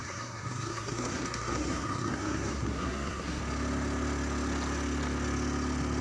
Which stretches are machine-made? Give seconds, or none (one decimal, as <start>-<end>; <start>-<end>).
0.0-3.4